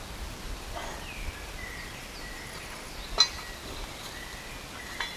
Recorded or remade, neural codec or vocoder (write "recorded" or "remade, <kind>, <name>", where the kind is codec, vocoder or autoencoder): recorded